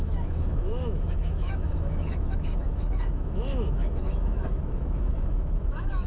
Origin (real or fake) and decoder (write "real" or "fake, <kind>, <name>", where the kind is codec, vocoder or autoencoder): fake, autoencoder, DAC-VAE